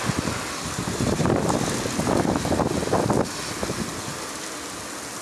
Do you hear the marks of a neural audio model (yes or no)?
no